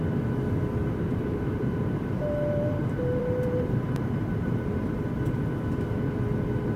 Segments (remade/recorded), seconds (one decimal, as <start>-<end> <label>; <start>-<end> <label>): 0.0-0.8 recorded; 0.8-4.9 remade; 4.9-6.8 recorded